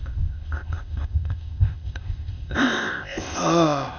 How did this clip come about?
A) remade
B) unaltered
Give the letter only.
A